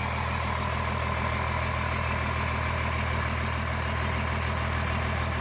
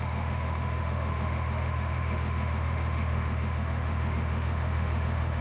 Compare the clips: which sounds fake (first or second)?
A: second